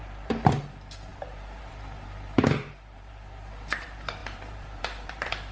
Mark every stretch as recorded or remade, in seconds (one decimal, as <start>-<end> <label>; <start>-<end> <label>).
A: 0.0-5.5 remade